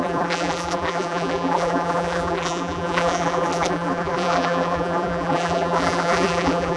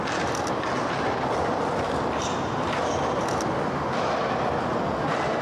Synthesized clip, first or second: first